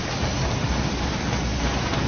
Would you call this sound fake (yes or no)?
no